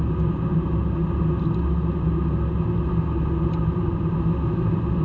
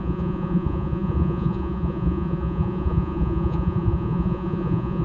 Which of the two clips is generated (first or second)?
second